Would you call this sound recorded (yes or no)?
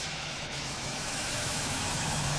no